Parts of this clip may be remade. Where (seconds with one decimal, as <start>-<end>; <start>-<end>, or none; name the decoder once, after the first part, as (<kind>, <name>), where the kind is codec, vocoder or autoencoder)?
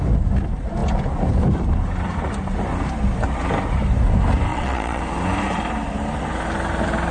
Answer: 4.5-5.0 (vocoder, Vocos)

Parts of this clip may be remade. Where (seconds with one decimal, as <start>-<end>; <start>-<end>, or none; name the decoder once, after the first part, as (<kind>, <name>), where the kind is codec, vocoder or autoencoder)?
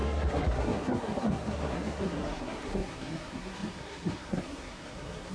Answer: 0.0-5.3 (codec, SNAC)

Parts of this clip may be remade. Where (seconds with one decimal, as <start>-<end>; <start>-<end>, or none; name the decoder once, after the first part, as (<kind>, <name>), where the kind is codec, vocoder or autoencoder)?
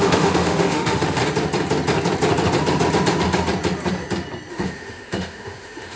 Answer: 0.0-1.2 (autoencoder, DAC-VAE); 4.5-6.0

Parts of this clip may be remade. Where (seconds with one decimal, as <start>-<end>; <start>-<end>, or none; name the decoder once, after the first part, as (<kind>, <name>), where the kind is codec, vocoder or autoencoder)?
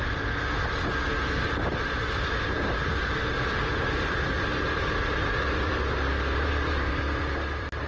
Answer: 2.3-5.3 (vocoder, BigVGAN v2); 6.1-6.9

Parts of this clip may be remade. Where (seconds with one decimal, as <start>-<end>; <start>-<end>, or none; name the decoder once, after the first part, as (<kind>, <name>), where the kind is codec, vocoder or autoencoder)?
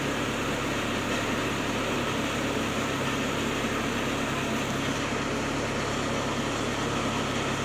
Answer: 1.4-3.1 (vocoder, BigVGAN v2)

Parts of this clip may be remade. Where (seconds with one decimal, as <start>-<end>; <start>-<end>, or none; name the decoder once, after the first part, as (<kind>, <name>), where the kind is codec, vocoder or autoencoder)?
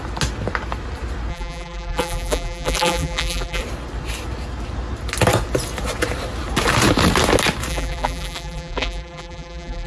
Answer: 1.3-3.6 (vocoder, BigVGAN v2); 7.7-9.9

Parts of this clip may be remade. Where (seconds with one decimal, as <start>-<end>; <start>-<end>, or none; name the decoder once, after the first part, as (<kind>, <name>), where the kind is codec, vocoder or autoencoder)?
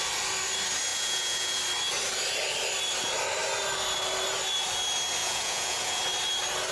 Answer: 0.9-1.6 (vocoder, Vocos); 5.2-6.0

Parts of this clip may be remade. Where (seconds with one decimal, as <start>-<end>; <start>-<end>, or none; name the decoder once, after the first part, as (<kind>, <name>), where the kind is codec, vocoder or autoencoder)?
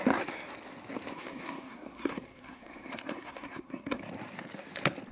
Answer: 1.1-4.0 (codec, SNAC)